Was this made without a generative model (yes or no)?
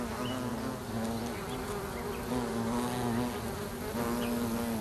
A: yes